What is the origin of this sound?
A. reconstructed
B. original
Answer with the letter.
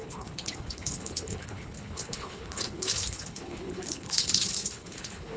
A